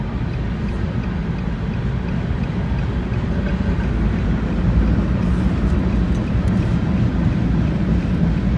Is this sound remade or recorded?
recorded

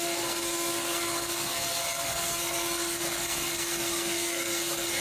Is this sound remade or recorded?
remade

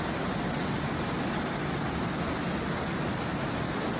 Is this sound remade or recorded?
recorded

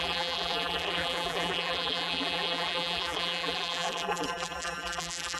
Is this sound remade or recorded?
remade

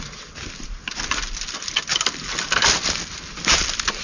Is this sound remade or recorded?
recorded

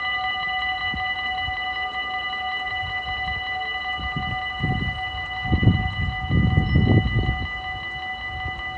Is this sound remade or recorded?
recorded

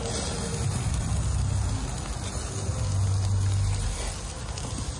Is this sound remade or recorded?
recorded